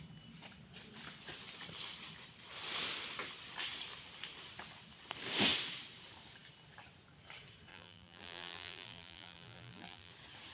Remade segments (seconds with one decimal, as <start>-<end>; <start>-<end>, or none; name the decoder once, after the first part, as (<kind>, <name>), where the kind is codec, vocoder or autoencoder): 7.7-10.1 (vocoder, BigVGAN v2)